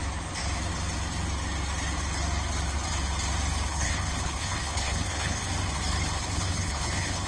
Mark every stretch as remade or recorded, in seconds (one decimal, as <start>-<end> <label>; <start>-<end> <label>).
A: 0.0-3.7 recorded; 3.7-5.4 remade; 5.4-6.1 recorded; 6.1-7.3 remade